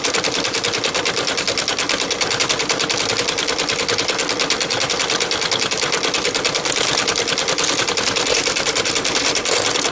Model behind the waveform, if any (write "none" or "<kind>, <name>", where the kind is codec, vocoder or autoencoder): none